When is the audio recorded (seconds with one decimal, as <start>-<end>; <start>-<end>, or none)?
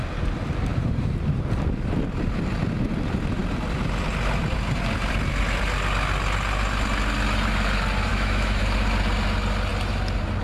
0.0-8.1; 8.6-10.4